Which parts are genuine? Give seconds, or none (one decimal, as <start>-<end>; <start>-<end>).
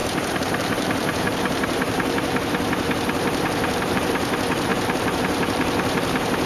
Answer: none